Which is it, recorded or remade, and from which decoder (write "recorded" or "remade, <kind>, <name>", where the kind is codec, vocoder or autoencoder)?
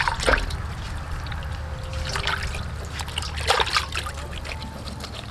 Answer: recorded